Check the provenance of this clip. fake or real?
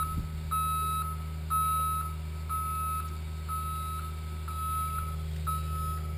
real